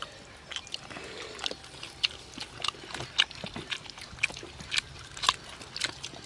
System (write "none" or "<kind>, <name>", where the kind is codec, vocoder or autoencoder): none